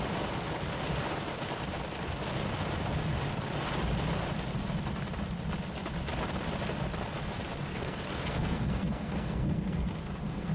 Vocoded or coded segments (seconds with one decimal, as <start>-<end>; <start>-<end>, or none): 7.7-10.5